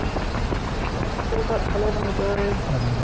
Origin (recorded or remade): recorded